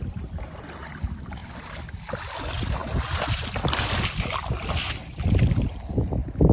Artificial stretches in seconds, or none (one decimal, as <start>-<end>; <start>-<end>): none